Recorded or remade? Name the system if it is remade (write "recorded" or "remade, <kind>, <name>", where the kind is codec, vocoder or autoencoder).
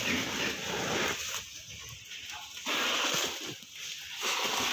recorded